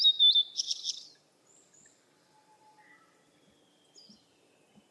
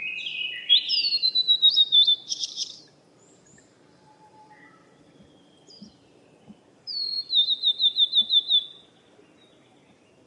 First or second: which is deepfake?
second